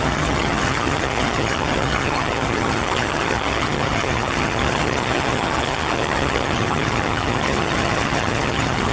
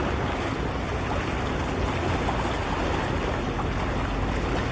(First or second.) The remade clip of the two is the first